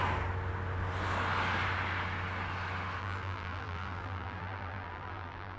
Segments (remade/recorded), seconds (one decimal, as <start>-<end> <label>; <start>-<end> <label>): 0.0-3.0 recorded; 3.0-5.6 remade